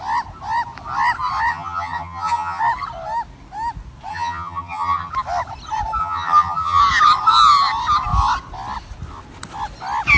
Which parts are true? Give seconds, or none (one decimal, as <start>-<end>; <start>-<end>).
0.0-1.5; 2.6-4.1; 5.1-6.0; 6.8-10.2